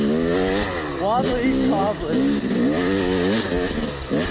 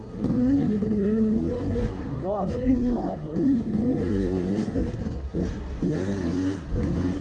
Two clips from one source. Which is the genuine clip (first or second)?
first